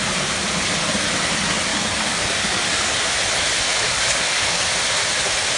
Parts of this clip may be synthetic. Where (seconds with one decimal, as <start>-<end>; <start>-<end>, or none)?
1.7-2.9; 3.7-4.7